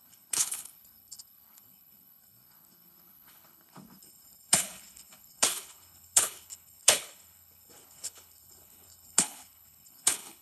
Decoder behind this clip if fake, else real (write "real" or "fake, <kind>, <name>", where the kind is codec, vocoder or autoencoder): fake, codec, HILCodec